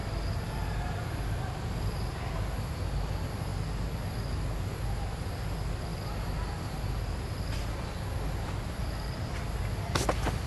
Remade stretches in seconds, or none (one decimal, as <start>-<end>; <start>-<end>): none